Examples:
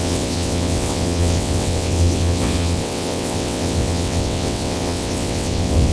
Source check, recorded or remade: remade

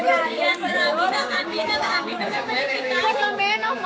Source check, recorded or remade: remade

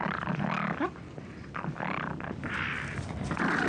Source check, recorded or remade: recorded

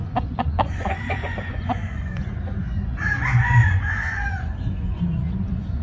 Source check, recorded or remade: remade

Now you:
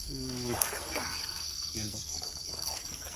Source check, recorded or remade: remade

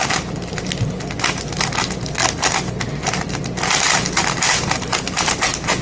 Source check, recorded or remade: recorded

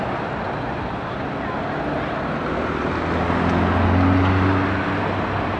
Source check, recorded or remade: recorded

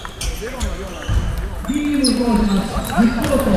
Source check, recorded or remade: remade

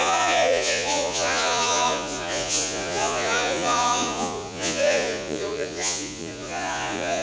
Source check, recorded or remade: remade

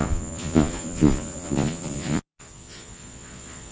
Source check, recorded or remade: remade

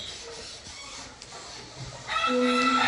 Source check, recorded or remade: recorded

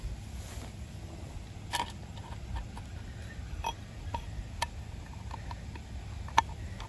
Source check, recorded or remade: recorded